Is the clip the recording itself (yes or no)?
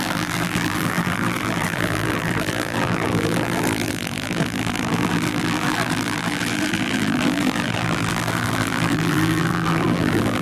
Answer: no